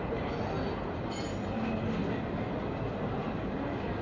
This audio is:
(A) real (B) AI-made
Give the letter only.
A